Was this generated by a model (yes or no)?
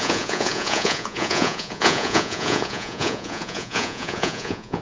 yes